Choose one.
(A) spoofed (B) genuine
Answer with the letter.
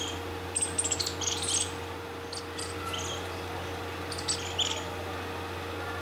B